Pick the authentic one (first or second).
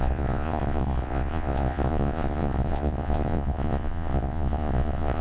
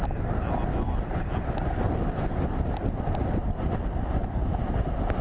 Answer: second